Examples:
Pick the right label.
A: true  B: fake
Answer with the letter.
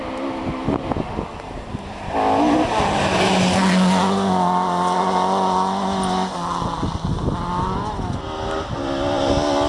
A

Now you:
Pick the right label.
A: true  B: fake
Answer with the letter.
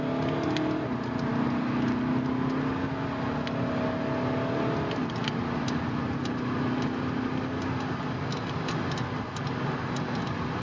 A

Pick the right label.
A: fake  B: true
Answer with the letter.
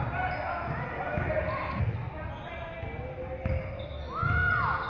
B